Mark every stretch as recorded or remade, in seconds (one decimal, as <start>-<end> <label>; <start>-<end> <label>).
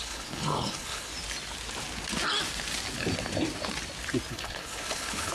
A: 0.0-1.1 remade; 1.1-4.3 recorded; 4.3-5.3 remade